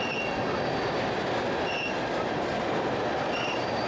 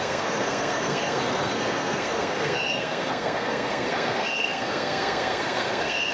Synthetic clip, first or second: second